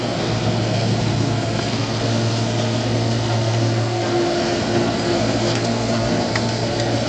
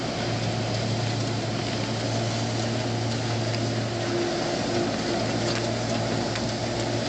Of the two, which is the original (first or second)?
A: second